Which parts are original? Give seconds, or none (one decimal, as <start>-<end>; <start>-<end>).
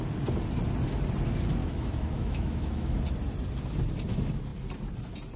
0.0-1.6; 3.0-5.4